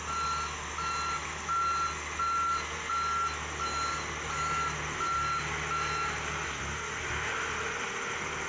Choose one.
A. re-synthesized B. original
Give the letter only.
B